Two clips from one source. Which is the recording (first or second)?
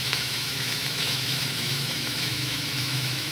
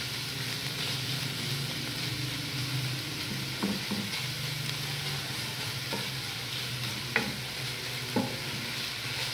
second